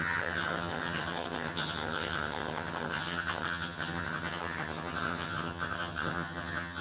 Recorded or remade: remade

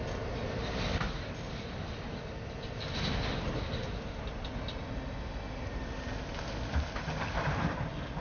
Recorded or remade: recorded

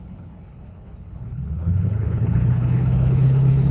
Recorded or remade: remade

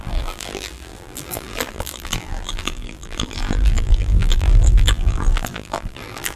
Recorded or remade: remade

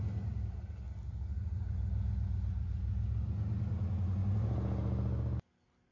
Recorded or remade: recorded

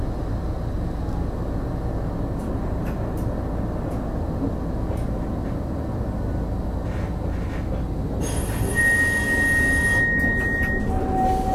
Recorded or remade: recorded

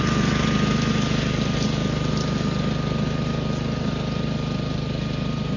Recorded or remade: recorded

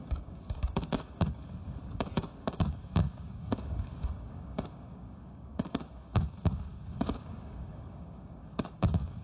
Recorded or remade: remade